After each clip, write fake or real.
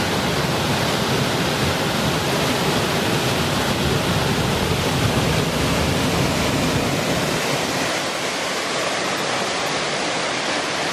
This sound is real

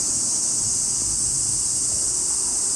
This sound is real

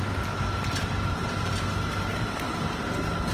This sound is real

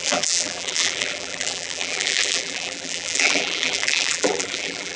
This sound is fake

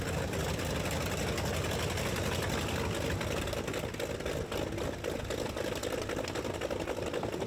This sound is real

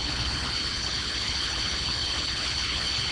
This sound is fake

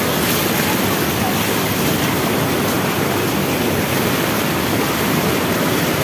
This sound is real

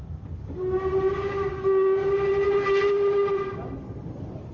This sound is real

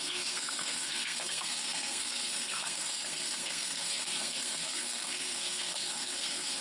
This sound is fake